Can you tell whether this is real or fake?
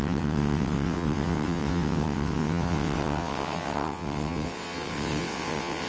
fake